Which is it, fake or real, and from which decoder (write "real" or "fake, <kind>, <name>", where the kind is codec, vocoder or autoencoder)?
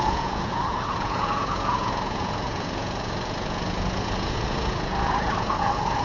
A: fake, vocoder, Vocos